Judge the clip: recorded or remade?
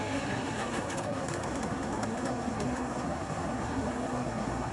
remade